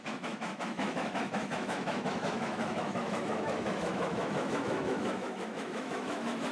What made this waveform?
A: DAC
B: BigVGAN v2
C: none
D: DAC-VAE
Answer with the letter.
D